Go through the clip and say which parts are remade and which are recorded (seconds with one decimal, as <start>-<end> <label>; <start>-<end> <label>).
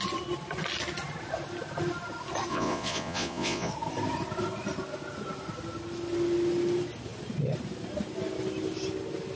0.0-2.5 recorded; 2.5-3.7 remade; 3.7-9.4 recorded